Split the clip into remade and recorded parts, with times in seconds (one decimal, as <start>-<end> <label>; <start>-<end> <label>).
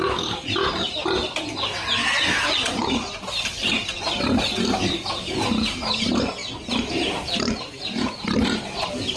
0.0-9.2 recorded